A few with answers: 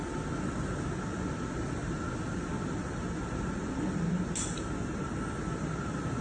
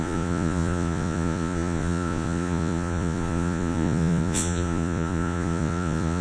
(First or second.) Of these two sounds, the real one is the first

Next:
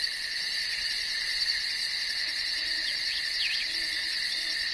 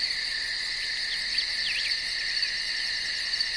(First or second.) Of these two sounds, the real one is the second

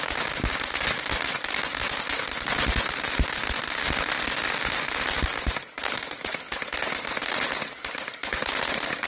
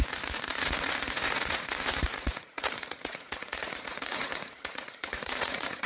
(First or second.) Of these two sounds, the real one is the first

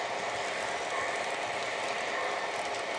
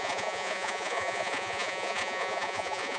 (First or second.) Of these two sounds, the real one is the first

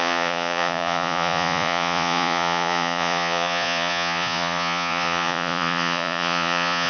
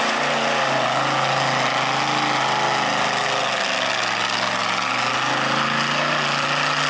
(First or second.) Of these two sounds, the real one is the second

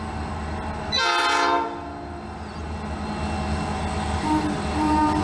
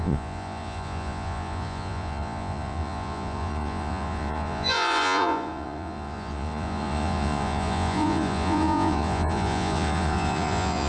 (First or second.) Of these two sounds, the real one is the first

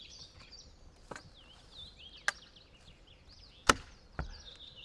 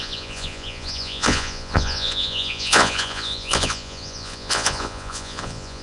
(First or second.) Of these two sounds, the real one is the first